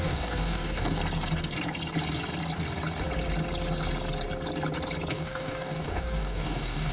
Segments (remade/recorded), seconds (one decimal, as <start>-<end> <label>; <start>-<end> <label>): 0.0-1.0 remade; 1.0-5.1 recorded; 5.1-6.9 remade